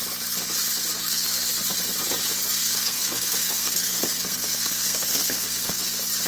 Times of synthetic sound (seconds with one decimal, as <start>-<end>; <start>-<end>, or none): 1.0-1.5; 2.6-5.8